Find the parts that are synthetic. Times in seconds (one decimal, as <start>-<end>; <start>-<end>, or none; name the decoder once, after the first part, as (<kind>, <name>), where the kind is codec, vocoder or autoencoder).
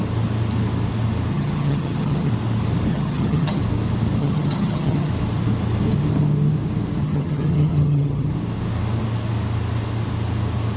1.3-2.3 (vocoder, HiFi-GAN); 2.9-3.6; 4.2-5.1; 7.0-8.3